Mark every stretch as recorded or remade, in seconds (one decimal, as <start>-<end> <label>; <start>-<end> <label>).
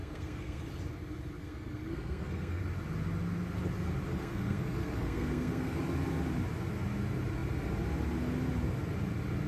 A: 0.0-0.6 remade; 0.6-1.4 recorded; 1.4-2.6 remade; 2.6-4.1 recorded; 4.1-5.8 remade; 5.8-9.5 recorded